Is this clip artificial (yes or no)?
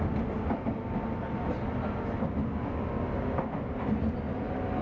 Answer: no